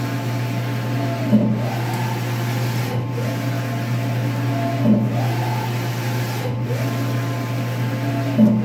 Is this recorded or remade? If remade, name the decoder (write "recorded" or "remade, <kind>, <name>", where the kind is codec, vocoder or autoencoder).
recorded